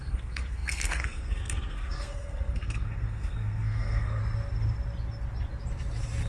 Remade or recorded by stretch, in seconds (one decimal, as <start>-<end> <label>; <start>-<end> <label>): 0.0-4.2 remade; 4.2-6.3 recorded